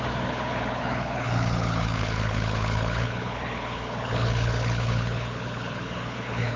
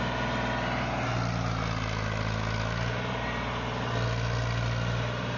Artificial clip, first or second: first